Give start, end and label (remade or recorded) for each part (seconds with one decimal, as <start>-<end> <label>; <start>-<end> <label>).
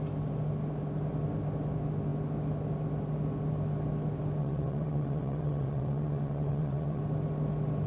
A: 0.0-4.4 recorded; 4.4-7.0 remade; 7.0-7.9 recorded